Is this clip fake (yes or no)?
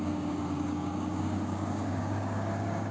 yes